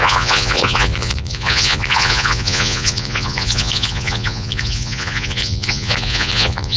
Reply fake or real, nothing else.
fake